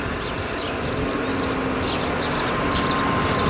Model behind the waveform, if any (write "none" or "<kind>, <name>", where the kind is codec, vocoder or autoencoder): none